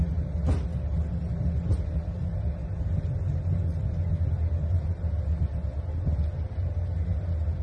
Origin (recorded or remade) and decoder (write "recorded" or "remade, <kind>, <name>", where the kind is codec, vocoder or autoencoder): recorded